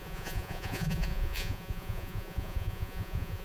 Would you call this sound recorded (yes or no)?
no